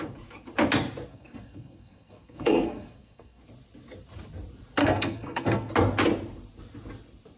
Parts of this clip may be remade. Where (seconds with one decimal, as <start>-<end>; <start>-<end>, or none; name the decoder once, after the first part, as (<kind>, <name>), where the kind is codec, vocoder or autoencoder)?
1.1-3.4 (codec, SNAC); 4.8-5.7